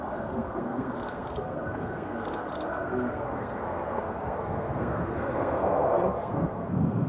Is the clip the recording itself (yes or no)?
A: no